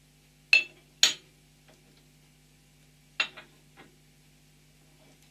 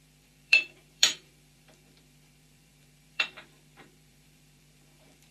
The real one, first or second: first